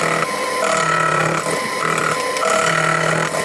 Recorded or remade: recorded